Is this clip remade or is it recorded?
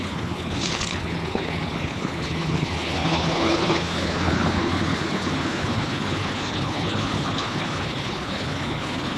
remade